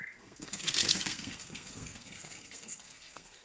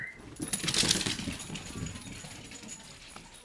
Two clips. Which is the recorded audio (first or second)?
second